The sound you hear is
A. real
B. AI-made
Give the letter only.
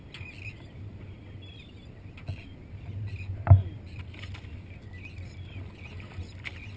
A